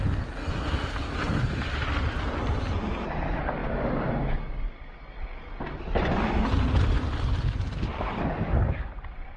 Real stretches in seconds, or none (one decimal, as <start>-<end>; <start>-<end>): 0.0-9.4